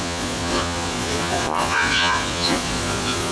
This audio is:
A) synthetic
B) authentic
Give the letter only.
A